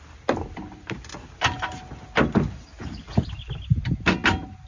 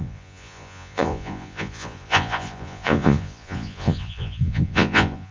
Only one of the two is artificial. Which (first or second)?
second